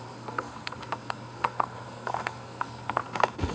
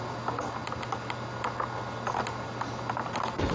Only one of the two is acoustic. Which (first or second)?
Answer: second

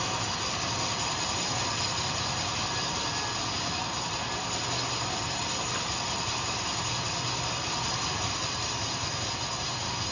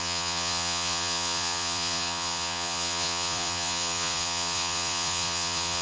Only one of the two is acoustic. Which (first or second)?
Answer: first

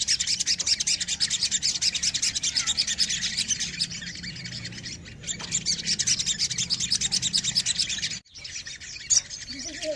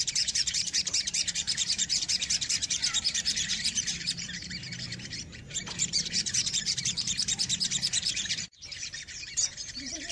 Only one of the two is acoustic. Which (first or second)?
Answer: first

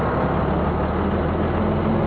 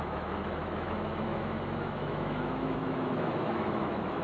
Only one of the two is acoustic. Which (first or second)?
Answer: first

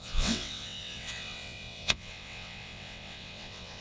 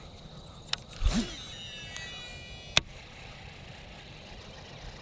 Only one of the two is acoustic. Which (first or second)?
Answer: second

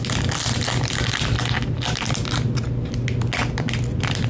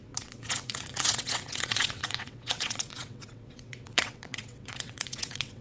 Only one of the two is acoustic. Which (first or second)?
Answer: first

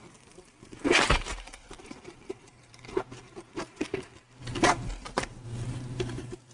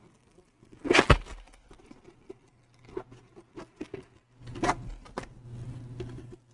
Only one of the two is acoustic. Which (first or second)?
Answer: second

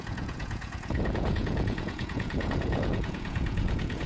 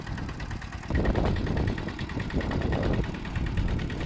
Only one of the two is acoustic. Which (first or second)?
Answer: second